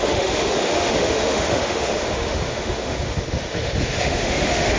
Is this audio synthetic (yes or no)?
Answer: yes